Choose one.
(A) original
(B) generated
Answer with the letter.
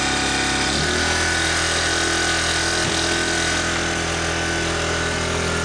A